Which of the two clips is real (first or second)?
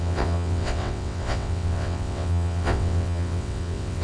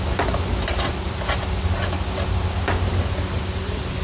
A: second